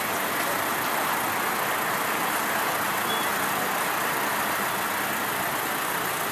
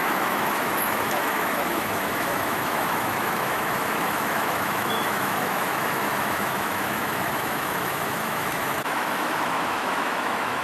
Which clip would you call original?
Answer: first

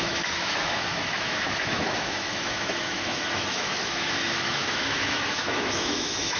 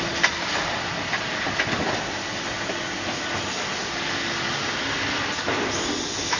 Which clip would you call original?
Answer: second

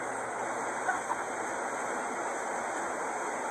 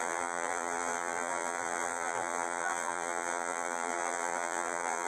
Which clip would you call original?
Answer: first